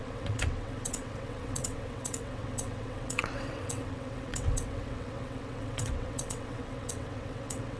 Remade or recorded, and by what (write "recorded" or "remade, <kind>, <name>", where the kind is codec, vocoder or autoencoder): remade, vocoder, WaveNeXt